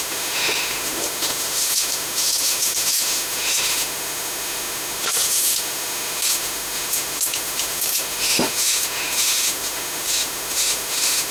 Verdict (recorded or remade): remade